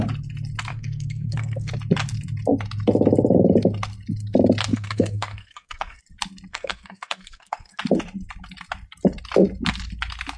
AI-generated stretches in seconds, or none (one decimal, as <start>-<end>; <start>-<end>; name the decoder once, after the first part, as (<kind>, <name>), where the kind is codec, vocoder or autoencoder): 0.7-1.7 (codec, SNAC); 4.7-6.0; 6.5-7.8